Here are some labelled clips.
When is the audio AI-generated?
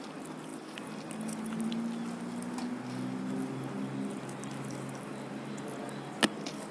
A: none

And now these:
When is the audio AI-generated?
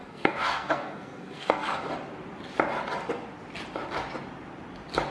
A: 0.0-1.9 (codec, SNAC)